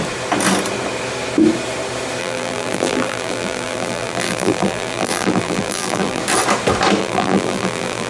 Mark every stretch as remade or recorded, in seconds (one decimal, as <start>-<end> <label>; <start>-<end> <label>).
0.0-2.2 recorded; 2.2-6.2 remade; 6.2-7.0 recorded; 7.0-8.1 remade